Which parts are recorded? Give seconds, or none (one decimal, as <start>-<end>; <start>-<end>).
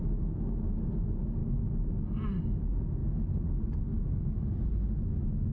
0.0-5.5